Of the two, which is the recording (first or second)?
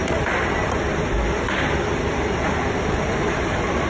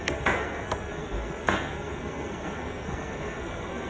first